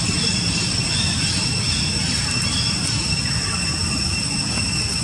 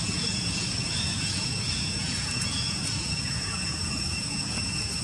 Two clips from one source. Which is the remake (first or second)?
second